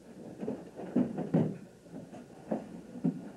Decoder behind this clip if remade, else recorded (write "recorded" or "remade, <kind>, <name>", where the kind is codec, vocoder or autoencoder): remade, vocoder, BigVGAN v2